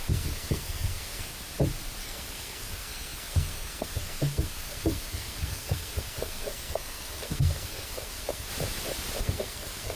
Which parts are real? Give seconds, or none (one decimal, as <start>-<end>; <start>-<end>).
1.3-2.0; 8.5-9.2